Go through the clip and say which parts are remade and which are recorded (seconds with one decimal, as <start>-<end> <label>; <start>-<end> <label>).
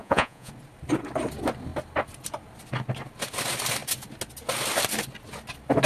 0.0-0.5 remade; 0.5-5.9 recorded